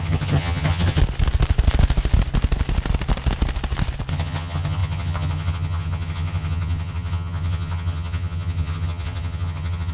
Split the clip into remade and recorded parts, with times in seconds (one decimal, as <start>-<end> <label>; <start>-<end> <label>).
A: 0.0-1.0 remade; 1.0-4.1 recorded; 4.1-9.9 remade